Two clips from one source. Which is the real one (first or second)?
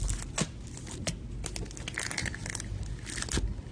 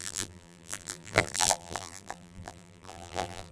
first